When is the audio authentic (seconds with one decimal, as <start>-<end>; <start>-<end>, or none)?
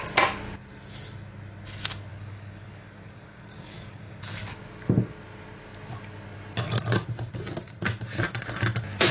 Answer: 0.0-2.1; 4.6-9.1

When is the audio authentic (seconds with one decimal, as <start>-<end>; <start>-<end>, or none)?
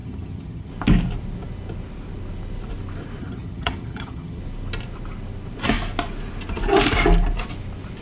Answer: 0.7-3.2; 4.4-8.0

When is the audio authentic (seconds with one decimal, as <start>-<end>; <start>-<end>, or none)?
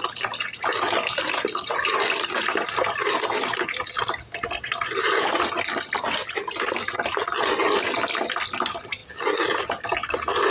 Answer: 0.0-10.5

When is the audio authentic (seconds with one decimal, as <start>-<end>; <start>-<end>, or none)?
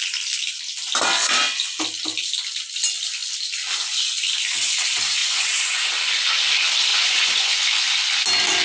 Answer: 0.0-5.2; 5.9-6.9; 7.6-8.6